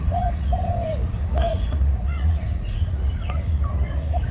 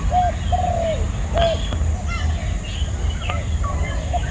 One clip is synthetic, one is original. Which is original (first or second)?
second